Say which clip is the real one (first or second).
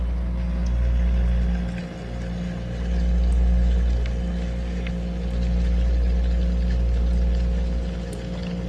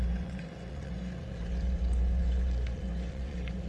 first